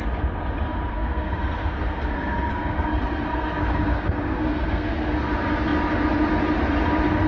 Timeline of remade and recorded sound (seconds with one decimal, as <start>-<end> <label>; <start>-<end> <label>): 0.0-0.9 recorded; 0.9-5.3 remade; 5.3-7.3 recorded